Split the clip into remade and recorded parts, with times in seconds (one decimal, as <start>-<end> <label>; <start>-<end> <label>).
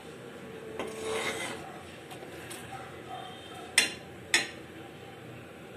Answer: 0.0-5.8 recorded